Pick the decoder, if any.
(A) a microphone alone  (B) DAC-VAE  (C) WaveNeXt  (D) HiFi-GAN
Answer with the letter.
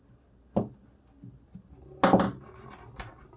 A